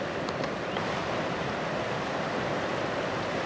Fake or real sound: real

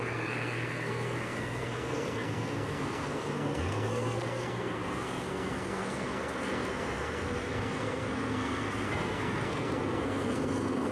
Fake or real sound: fake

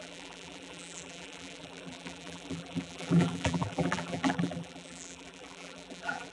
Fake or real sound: fake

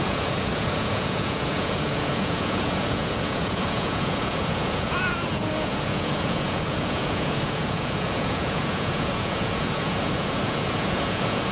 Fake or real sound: fake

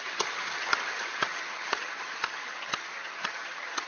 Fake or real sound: fake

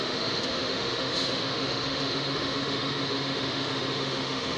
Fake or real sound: fake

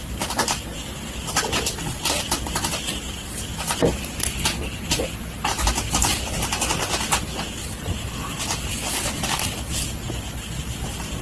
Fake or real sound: real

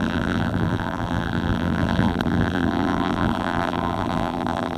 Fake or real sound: fake